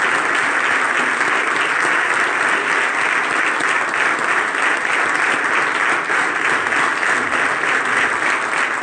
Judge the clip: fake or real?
real